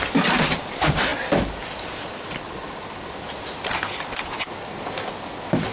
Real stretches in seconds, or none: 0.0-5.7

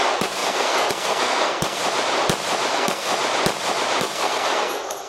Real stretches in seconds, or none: 1.8-2.7; 3.1-4.0

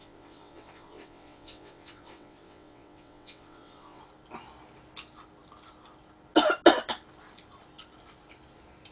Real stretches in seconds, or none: 4.0-8.9